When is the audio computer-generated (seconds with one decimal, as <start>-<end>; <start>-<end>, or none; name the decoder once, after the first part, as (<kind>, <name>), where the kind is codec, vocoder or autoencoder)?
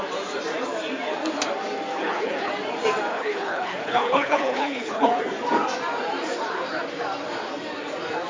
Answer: 1.9-2.5 (codec, HILCodec); 3.1-5.2